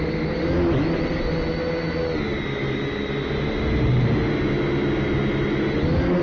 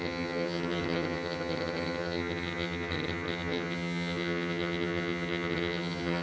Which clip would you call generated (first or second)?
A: second